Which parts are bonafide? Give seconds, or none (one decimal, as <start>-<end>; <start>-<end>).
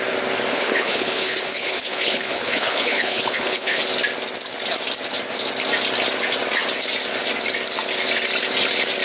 0.0-0.5; 3.8-9.0